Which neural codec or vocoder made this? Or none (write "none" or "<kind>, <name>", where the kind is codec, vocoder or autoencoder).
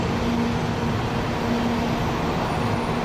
none